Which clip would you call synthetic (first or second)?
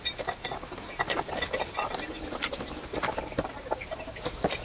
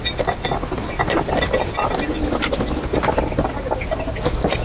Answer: first